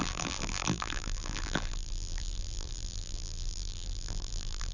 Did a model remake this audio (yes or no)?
yes